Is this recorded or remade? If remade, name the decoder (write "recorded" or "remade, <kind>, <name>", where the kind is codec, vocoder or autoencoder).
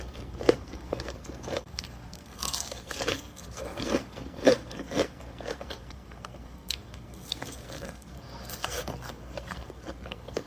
remade, codec, SNAC